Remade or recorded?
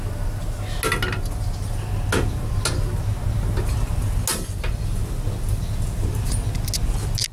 recorded